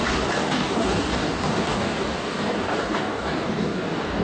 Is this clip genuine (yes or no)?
no